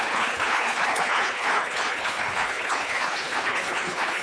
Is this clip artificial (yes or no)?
yes